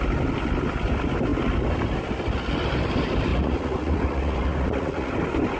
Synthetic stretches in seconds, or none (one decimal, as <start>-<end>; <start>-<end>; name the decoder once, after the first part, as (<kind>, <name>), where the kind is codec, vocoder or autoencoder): 3.3-5.1 (vocoder, Vocos)